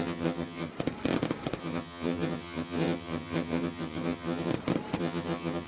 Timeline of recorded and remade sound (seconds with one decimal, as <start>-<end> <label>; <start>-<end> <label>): 0.0-0.7 remade; 0.7-1.6 recorded; 1.6-4.5 remade; 4.5-5.0 recorded; 5.0-5.7 remade